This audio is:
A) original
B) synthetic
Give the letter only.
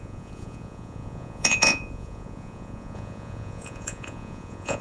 B